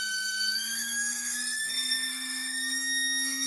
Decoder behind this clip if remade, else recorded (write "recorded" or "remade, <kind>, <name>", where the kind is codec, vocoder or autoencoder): remade, codec, SNAC